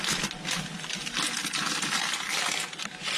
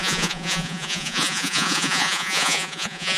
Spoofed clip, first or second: second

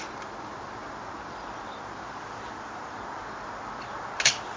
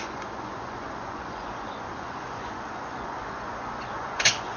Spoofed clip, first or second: second